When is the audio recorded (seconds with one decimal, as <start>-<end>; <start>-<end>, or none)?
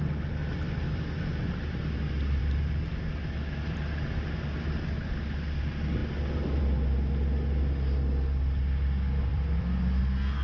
0.0-0.4; 2.4-9.3; 10.0-10.4